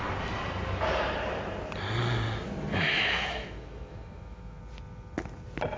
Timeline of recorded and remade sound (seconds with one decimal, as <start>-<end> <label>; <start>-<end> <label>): 0.0-2.7 recorded; 2.7-4.6 remade; 4.6-5.8 recorded